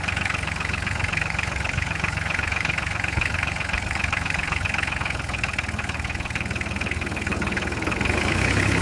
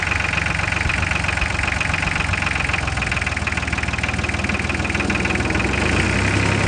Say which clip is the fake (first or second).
first